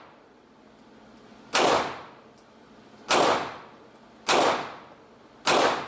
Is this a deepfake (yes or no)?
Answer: no